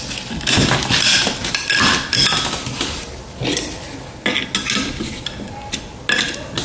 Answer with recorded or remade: recorded